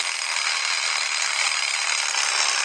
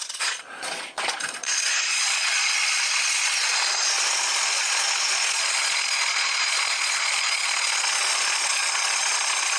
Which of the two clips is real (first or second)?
first